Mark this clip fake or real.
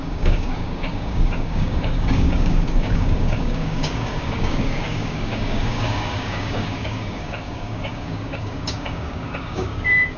fake